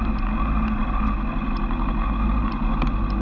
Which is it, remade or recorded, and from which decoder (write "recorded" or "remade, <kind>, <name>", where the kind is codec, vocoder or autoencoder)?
recorded